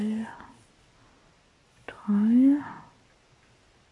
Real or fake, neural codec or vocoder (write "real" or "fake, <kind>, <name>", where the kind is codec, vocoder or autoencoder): real